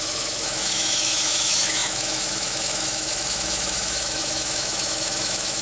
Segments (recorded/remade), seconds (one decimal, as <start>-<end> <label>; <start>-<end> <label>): 0.0-5.6 remade